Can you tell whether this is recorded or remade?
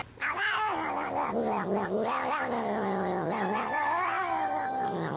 recorded